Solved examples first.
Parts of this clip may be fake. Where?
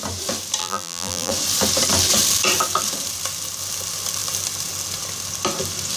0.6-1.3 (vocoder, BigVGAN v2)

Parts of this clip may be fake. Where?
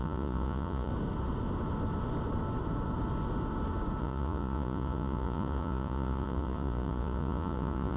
0.0-0.9 (vocoder, Vocos); 4.0-8.0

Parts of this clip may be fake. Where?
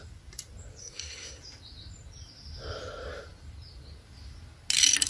0.8-1.4 (codec, SNAC)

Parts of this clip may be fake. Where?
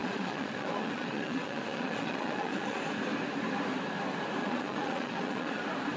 0.0-2.8 (vocoder, Vocos); 4.4-5.6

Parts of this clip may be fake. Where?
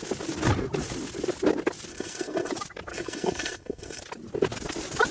1.9-2.5 (codec, SNAC); 2.9-4.0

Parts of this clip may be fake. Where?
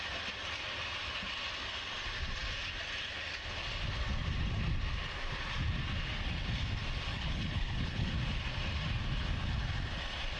7.1-8.1 (codec, HILCodec)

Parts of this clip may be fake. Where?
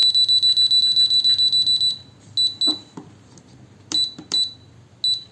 none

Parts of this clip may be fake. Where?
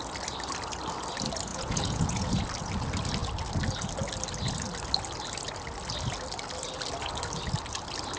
1.5-2.4 (vocoder, Vocos)